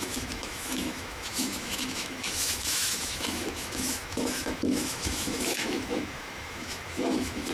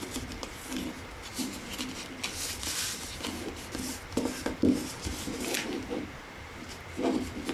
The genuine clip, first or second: second